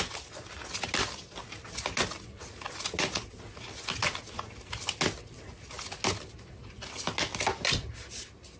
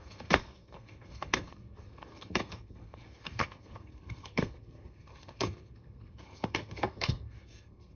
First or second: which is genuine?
first